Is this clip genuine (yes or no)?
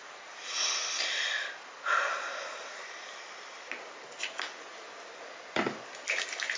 yes